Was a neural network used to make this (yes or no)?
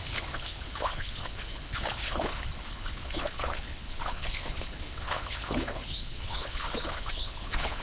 yes